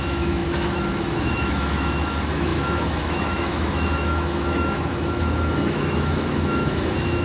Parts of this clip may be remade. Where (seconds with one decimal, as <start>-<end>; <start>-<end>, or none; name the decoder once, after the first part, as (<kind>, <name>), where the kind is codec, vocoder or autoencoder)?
0.0-7.2 (autoencoder, DAC-VAE)